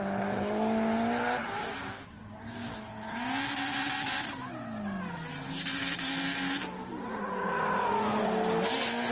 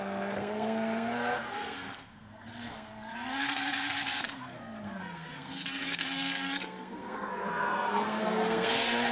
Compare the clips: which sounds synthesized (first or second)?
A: second